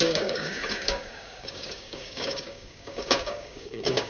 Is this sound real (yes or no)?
no